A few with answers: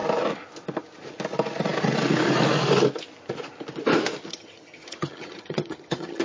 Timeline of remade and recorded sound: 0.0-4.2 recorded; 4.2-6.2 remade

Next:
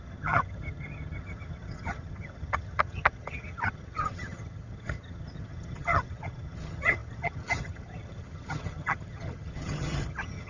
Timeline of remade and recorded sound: 0.0-10.5 remade

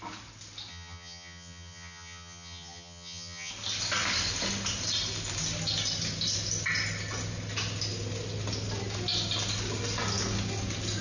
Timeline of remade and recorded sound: 0.0-0.7 recorded; 0.7-3.5 remade; 3.5-11.0 recorded

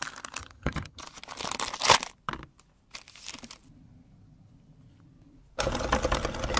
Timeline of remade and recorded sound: 0.0-0.4 recorded; 0.4-1.0 remade; 1.0-6.6 recorded